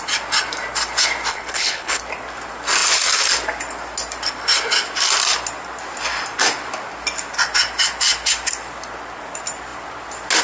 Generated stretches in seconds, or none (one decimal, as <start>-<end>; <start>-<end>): 1.3-2.0